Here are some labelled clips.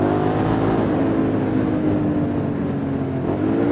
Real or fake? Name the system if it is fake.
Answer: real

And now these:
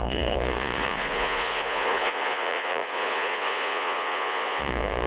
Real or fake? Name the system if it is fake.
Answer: fake, vocoder, Vocos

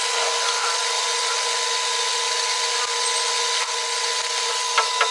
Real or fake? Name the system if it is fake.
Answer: real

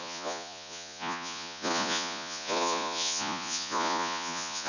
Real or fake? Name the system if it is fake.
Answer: fake, vocoder, Vocos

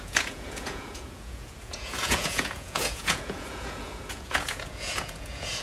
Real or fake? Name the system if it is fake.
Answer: fake, vocoder, Vocos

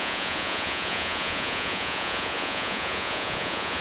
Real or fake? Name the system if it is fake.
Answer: fake, vocoder, Vocos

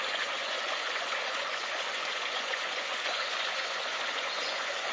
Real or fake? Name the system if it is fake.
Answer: fake, vocoder, Vocos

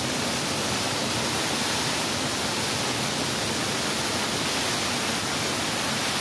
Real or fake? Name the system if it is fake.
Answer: real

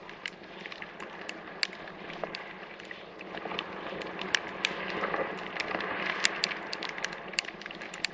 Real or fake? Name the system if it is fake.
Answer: real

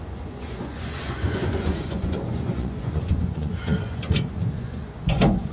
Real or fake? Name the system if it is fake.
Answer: fake, vocoder, Vocos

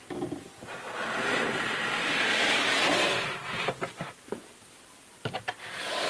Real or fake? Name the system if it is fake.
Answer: real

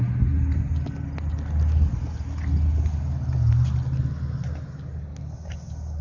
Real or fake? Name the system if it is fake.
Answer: real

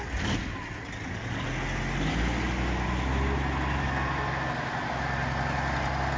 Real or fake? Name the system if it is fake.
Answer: real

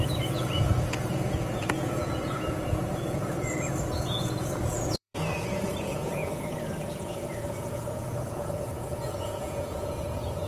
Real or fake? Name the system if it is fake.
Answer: fake, vocoder, Vocos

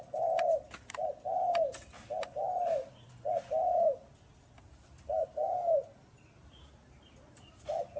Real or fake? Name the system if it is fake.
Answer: real